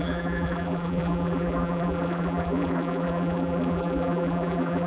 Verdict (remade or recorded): remade